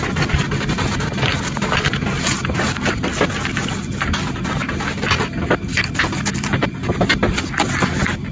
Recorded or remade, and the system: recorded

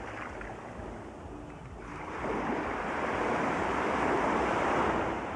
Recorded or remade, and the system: recorded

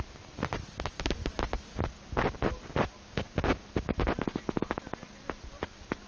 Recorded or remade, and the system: recorded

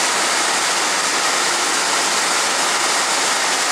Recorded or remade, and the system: recorded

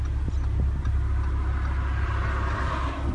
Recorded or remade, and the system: recorded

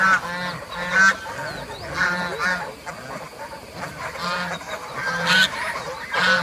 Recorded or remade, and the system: recorded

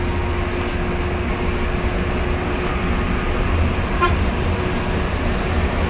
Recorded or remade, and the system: recorded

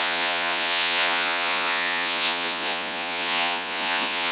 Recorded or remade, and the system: remade, vocoder, Vocos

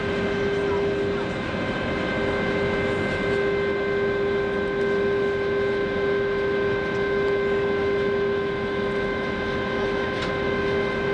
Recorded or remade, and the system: recorded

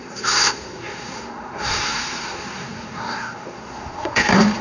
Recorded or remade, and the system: remade, codec, SNAC